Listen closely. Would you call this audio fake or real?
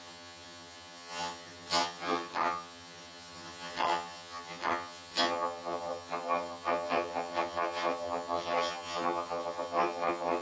fake